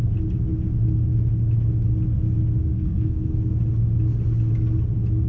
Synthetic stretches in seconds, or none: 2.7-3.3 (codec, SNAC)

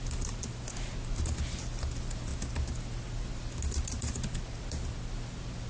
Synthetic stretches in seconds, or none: none

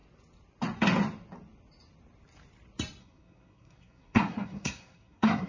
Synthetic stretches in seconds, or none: 3.0-5.5 (codec, SNAC)

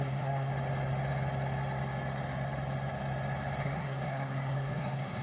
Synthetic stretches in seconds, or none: 0.0-0.5 (codec, SNAC); 3.6-5.2

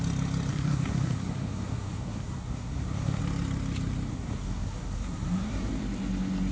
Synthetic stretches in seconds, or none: 0.5-3.2 (codec, SNAC); 4.1-5.7

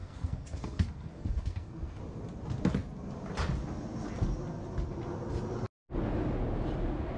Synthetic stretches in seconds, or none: 0.0-2.0 (codec, SNAC)

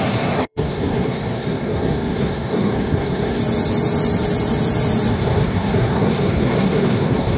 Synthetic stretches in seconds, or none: 0.0-3.4 (codec, SNAC); 5.1-7.4

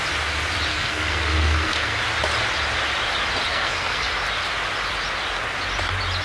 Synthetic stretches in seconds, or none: 0.7-2.0 (codec, SNAC); 3.5-4.1